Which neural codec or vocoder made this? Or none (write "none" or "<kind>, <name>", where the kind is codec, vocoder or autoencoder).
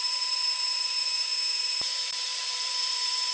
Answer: vocoder, BigVGAN v2